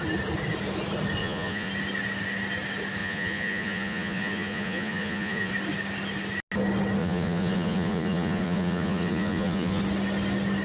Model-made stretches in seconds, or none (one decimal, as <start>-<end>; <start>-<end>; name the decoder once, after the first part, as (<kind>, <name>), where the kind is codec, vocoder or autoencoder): 1.2-1.7 (vocoder, Vocos); 3.0-5.5; 7.0-9.8